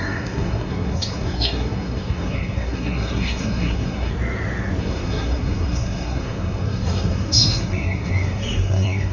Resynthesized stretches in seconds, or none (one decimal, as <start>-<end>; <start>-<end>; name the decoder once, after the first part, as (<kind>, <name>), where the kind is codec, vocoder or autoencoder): 0.0-4.1 (codec, SNAC); 4.8-9.1